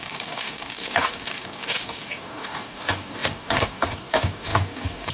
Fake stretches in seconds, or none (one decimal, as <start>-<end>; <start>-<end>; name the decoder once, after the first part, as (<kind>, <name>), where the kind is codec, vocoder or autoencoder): 0.0-5.1 (codec, DAC)